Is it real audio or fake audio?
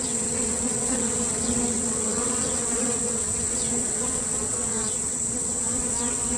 fake